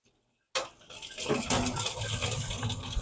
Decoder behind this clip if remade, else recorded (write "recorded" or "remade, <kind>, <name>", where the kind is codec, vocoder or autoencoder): recorded